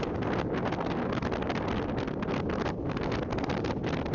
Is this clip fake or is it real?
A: real